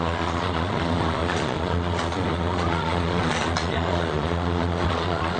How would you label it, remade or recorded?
remade